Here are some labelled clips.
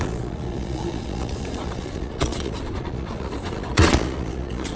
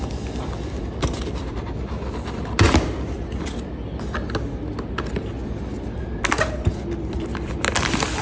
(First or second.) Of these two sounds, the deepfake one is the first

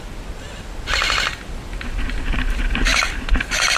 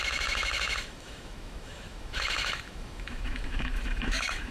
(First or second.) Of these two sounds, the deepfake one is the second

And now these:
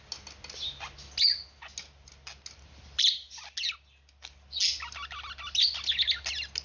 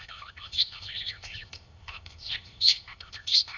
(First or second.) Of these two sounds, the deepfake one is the second